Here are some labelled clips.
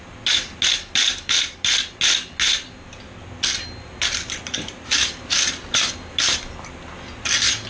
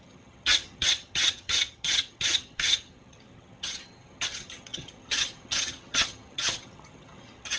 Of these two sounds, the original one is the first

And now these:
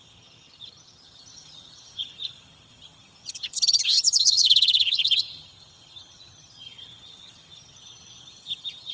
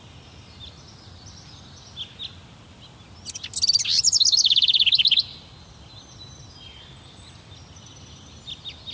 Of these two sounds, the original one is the second